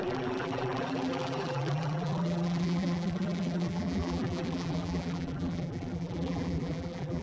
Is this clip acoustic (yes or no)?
no